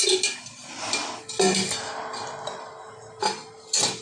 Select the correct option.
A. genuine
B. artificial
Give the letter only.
A